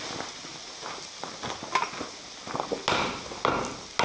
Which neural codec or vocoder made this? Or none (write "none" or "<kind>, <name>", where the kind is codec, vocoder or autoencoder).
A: none